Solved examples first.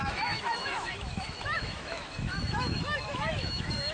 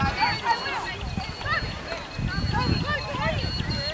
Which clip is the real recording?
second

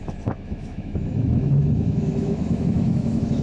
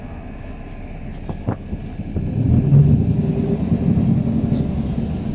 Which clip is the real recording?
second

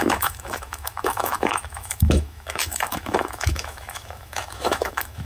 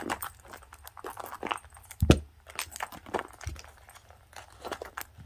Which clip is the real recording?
second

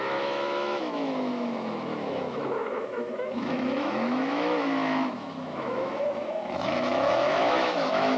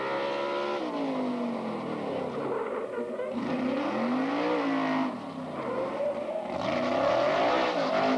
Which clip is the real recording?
second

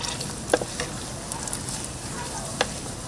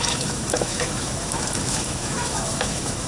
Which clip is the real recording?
first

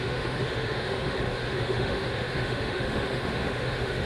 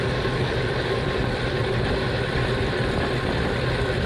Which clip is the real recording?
second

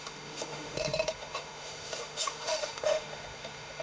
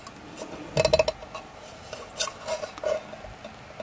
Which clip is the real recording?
second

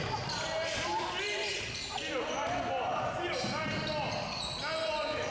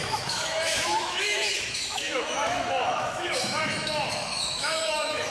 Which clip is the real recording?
first